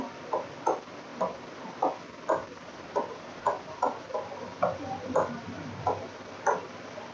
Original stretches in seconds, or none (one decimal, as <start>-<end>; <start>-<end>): 0.0-1.1; 1.7-2.4; 6.3-7.1